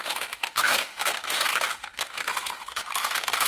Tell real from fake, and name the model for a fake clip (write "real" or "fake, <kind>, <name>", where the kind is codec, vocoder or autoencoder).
fake, autoencoder, DAC-VAE